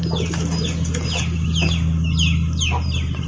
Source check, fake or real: real